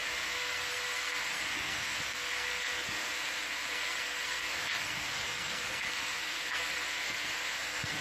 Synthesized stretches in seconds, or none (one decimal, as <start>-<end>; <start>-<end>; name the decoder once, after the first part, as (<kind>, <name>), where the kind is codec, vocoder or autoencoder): 0.0-8.0 (codec, SNAC)